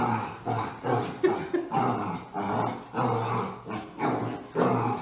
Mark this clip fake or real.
real